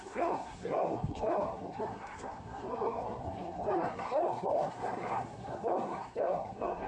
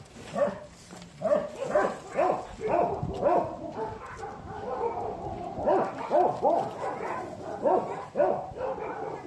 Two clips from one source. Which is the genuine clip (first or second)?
second